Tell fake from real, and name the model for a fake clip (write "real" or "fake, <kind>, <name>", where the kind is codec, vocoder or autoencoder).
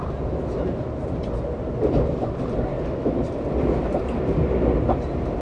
real